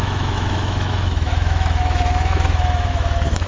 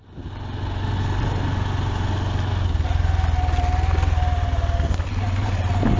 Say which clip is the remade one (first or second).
first